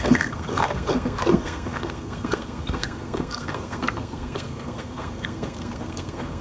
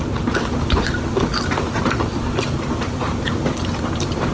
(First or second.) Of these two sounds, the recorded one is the second